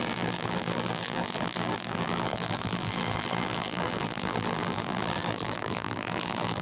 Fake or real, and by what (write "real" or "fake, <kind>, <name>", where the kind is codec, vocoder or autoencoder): fake, vocoder, BigVGAN v2